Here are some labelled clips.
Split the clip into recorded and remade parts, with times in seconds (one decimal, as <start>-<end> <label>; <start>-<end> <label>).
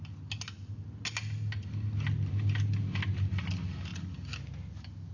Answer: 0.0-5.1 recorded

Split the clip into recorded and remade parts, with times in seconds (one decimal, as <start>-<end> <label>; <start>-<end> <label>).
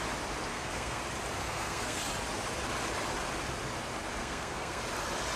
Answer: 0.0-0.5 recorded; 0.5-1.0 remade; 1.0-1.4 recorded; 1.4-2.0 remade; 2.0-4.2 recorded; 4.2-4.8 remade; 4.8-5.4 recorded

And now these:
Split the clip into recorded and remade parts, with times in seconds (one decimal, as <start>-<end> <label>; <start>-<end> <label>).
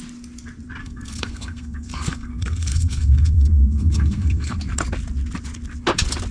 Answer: 0.0-0.8 recorded; 0.8-4.6 remade; 4.6-6.3 recorded